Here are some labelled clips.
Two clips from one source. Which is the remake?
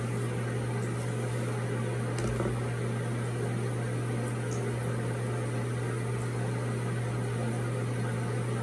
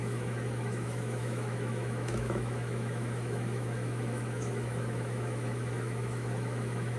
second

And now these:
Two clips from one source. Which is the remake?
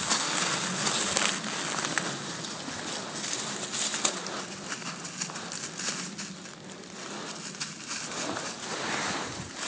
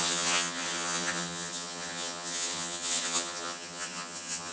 second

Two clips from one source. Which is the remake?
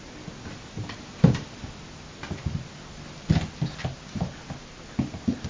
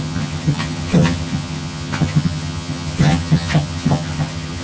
second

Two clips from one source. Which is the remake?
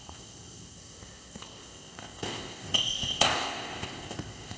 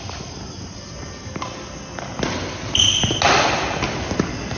first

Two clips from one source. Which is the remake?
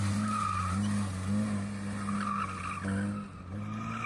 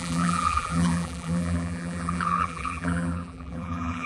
second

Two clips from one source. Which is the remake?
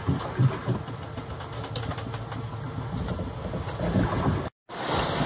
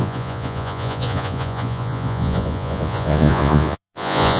second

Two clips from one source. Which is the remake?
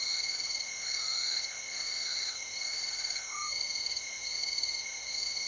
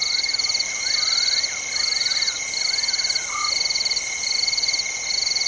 first